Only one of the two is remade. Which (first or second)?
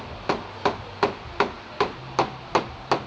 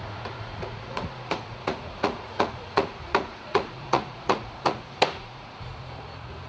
second